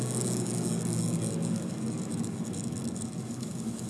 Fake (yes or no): yes